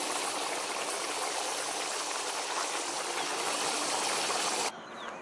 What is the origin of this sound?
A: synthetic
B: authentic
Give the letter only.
B